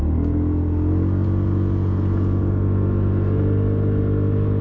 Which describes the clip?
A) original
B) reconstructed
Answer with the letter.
A